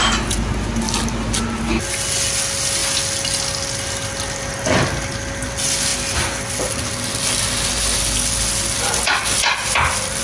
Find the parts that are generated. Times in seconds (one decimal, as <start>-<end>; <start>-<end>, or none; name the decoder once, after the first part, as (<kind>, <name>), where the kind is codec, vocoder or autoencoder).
none